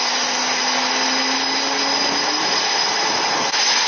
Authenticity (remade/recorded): recorded